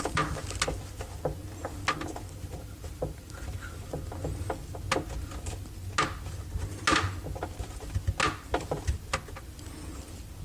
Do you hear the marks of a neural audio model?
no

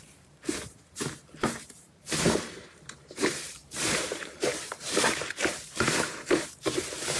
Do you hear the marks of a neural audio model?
yes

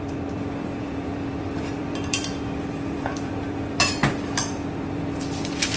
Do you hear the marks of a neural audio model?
yes